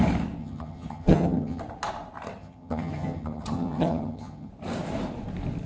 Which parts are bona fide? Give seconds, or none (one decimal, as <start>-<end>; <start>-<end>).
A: 0.0-0.4; 1.6-2.4; 4.5-5.7